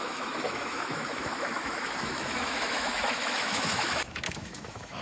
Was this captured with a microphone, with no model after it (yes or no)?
no